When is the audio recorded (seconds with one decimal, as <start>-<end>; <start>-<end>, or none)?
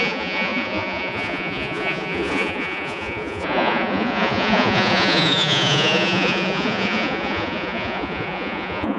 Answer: none